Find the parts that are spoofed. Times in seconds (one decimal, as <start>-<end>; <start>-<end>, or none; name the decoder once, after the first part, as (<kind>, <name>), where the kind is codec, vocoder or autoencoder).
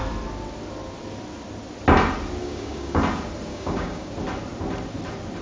2.4-3.0 (codec, DAC); 3.5-4.1